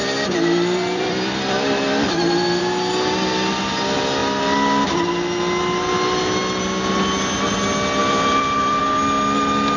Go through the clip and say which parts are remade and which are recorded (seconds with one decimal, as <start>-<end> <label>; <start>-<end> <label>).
0.0-2.6 remade; 2.6-8.0 recorded; 8.0-8.8 remade; 8.8-9.8 recorded